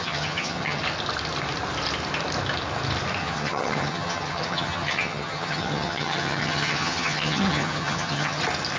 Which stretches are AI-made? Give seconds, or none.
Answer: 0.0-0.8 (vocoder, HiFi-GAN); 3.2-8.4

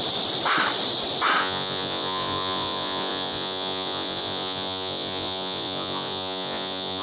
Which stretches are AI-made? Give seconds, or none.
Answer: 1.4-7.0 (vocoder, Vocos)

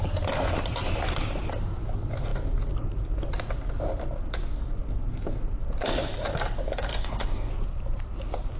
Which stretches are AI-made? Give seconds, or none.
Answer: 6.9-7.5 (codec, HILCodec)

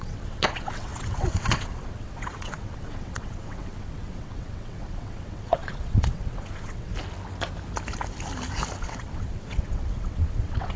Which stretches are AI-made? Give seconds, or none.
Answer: 0.0-6.9 (vocoder, WaveNeXt); 8.8-10.8

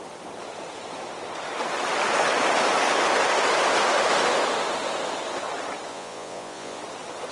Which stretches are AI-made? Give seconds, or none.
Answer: 5.9-6.8 (vocoder, Vocos)

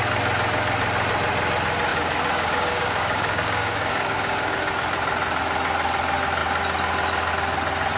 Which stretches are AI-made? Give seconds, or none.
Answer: 1.9-4.7 (codec, DAC)